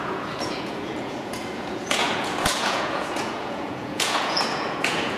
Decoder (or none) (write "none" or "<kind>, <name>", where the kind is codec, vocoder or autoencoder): vocoder, Vocos